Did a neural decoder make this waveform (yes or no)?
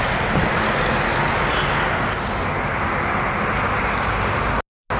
no